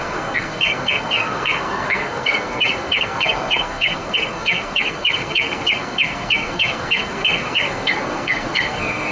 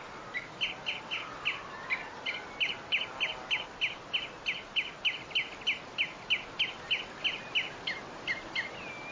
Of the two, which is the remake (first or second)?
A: first